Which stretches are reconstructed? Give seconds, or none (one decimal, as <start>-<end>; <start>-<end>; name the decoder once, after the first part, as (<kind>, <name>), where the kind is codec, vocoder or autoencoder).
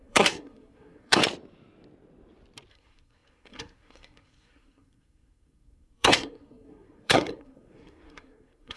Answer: 0.0-1.2 (codec, SNAC); 2.7-8.8